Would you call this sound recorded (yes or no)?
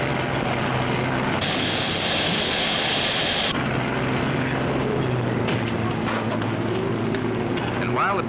yes